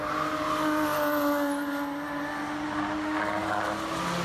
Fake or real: real